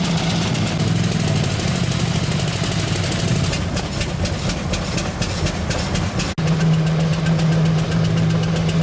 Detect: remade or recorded recorded